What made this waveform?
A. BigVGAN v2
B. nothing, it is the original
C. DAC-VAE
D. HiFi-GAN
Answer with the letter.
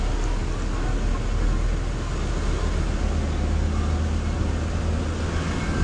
B